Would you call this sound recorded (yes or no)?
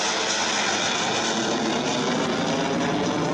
yes